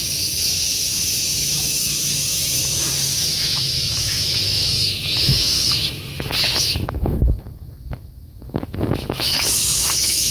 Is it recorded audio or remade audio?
remade